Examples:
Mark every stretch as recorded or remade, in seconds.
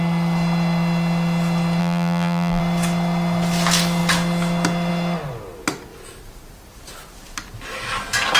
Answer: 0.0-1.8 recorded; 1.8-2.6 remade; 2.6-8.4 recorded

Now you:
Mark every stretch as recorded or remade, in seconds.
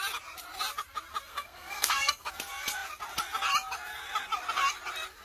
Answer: 0.0-1.3 recorded; 1.3-2.3 remade; 2.3-5.2 recorded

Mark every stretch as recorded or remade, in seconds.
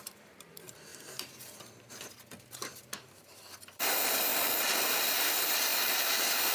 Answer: 0.0-0.9 remade; 0.9-2.0 recorded; 2.0-4.3 remade; 4.3-4.9 recorded; 4.9-6.5 remade